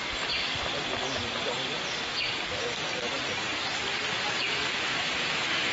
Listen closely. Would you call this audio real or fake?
fake